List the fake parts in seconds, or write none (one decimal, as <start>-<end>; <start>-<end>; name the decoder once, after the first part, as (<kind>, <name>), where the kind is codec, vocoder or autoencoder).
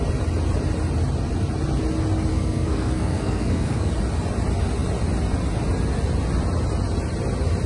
2.3-3.9 (codec, SNAC)